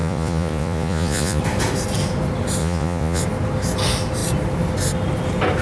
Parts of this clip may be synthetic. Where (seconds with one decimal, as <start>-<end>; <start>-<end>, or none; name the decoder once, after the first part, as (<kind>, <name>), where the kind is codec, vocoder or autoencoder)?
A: 0.0-1.4 (vocoder, Vocos); 2.6-3.2